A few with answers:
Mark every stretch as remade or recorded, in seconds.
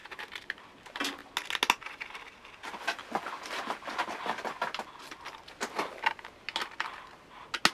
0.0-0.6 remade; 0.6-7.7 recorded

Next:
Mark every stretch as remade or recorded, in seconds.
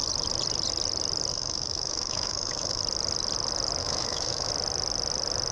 0.0-1.3 recorded; 1.3-2.8 remade; 2.8-3.8 recorded; 3.8-4.5 remade; 4.5-5.5 recorded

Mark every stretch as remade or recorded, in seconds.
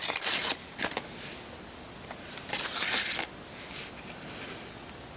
0.0-5.2 recorded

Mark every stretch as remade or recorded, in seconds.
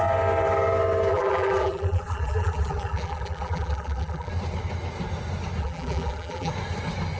0.0-1.1 recorded; 1.1-4.3 remade; 4.3-5.6 recorded; 5.6-6.5 remade; 6.5-7.2 recorded